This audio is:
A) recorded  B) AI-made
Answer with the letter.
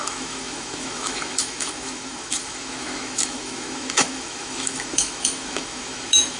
B